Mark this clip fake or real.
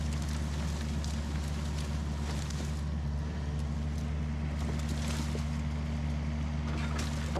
real